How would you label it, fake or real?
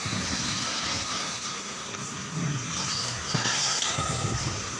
fake